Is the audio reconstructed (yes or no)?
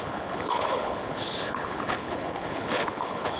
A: yes